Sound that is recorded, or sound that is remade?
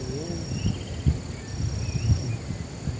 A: recorded